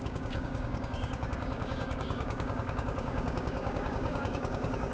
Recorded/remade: remade